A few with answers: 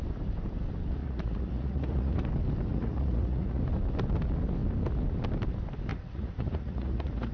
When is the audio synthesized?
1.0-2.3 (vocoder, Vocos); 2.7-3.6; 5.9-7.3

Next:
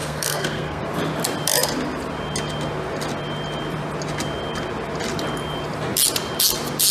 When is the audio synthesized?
0.0-0.8 (codec, SNAC)

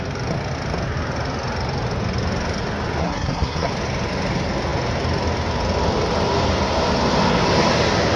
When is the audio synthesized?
3.0-3.7 (codec, SNAC)

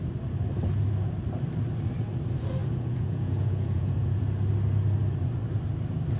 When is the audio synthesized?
2.6-4.2 (vocoder, Vocos)

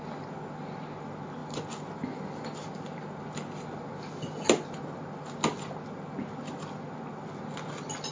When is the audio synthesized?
none

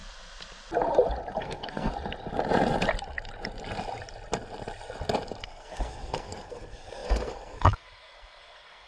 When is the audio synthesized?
1.4-1.9 (codec, SNAC); 5.4-8.9

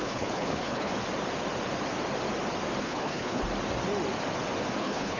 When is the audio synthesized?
0.0-0.9 (codec, HILCodec); 2.8-3.4; 4.8-5.2

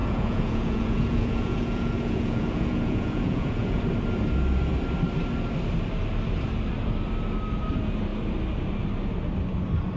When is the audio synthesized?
0.0-3.8 (vocoder, Vocos)